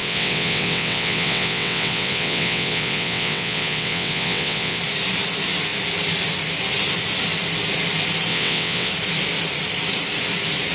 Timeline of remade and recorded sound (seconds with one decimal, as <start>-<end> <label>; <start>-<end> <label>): 0.0-4.8 remade; 4.8-8.3 recorded; 8.3-8.9 remade; 8.9-10.7 recorded